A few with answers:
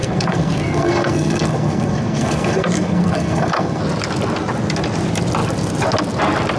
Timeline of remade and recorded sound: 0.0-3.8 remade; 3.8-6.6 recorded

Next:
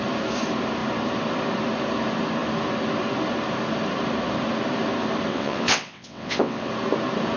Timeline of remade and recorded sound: 0.0-5.3 recorded; 5.3-6.7 remade; 6.7-7.4 recorded

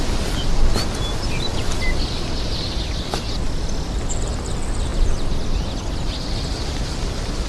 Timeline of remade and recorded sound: 0.0-7.5 recorded

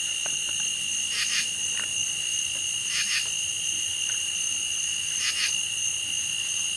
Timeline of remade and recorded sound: 0.0-2.0 recorded; 2.0-5.3 remade; 5.3-6.8 recorded

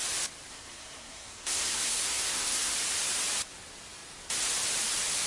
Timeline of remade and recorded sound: 0.0-0.5 recorded; 0.5-2.7 remade; 2.7-5.3 recorded

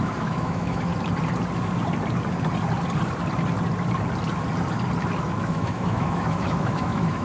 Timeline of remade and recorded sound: 0.0-0.9 remade; 0.9-5.2 recorded; 5.2-7.2 remade